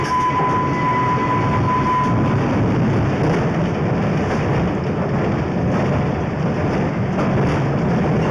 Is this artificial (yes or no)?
no